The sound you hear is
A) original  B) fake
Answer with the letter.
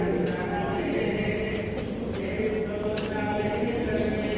A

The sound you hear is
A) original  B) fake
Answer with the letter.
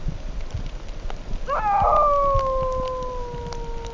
A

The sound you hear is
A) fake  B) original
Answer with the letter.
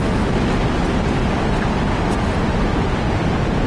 B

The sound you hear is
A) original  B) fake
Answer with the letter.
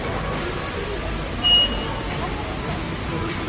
A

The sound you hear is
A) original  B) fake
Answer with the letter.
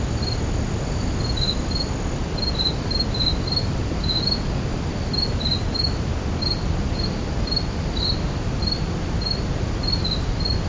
A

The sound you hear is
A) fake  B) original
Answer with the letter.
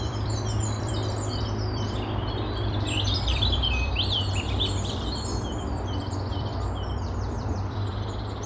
A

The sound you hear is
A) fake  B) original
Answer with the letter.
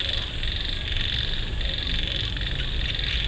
B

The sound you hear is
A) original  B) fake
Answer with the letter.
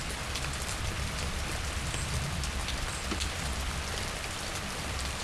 B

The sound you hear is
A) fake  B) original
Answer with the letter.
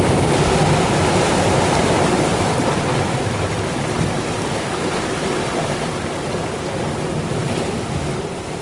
A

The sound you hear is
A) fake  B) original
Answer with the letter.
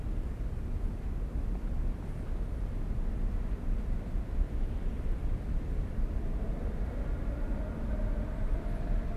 A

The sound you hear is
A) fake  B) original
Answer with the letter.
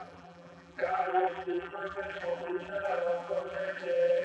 A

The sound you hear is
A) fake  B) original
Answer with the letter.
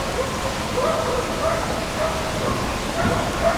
B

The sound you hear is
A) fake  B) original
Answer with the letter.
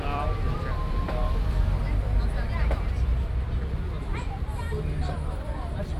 A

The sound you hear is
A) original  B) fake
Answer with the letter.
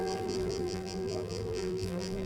B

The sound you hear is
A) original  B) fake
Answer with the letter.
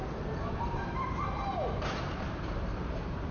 B